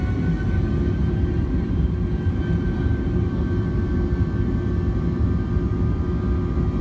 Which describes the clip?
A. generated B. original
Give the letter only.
B